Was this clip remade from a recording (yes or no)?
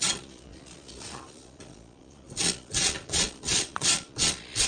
yes